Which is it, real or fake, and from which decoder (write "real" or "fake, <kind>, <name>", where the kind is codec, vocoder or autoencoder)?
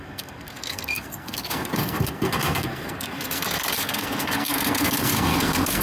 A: fake, codec, SNAC